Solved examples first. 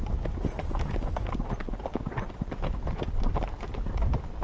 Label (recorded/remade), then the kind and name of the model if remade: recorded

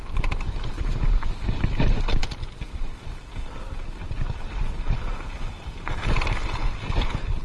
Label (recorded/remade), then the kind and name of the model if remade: recorded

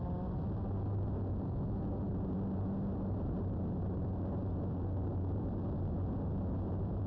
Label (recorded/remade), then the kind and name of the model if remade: recorded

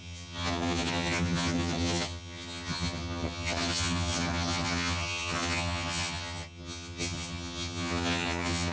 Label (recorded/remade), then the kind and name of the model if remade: remade, vocoder, HiFi-GAN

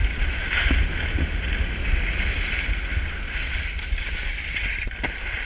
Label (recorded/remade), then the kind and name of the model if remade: recorded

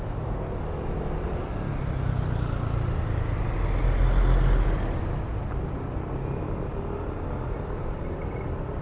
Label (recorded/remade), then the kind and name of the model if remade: recorded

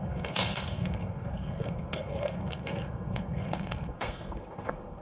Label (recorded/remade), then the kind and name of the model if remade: remade, codec, SNAC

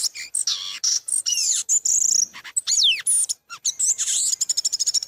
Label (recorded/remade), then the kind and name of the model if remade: recorded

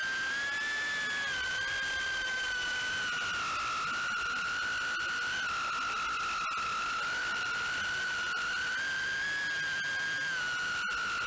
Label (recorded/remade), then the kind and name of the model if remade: recorded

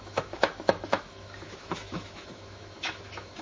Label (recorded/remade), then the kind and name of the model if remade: remade, autoencoder, DAC-VAE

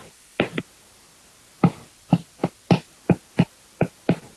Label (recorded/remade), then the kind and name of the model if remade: recorded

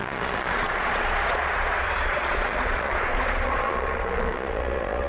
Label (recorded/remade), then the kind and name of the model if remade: remade, vocoder, Vocos